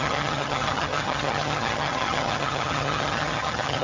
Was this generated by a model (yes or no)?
yes